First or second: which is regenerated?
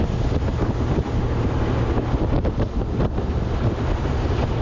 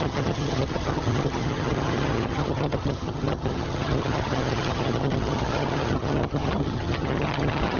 second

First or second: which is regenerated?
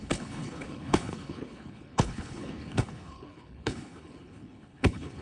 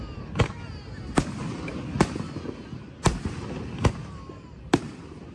first